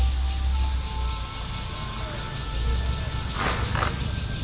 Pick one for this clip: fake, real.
real